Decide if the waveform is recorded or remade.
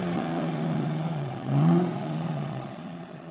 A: remade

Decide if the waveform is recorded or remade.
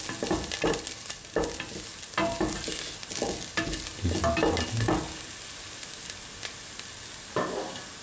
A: recorded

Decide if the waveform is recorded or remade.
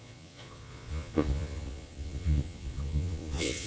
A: remade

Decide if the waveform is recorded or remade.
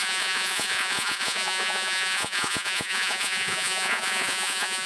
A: remade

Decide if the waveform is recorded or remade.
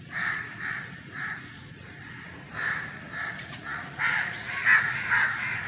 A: remade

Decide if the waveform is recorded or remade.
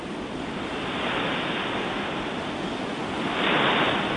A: recorded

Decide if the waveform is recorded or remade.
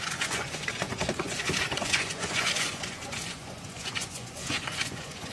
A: remade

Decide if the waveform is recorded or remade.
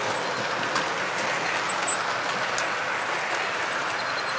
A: recorded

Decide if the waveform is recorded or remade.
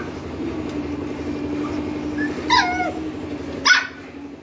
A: recorded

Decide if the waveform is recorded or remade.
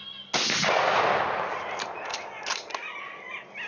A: recorded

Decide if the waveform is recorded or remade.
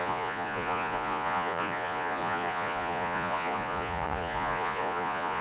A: remade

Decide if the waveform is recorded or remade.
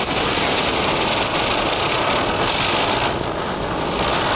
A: recorded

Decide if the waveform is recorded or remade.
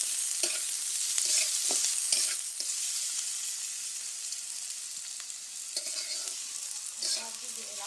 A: recorded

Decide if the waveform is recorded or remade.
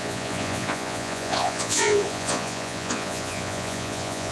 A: remade